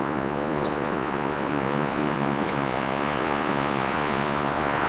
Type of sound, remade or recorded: remade